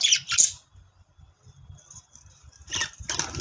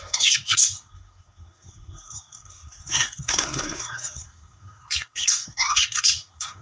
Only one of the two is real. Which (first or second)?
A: first